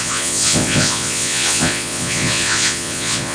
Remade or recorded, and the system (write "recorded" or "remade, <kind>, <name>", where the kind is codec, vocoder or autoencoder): remade, vocoder, Vocos